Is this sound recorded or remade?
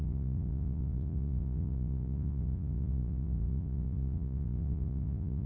remade